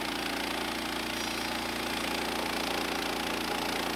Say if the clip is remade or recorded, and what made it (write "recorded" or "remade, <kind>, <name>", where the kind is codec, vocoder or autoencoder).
recorded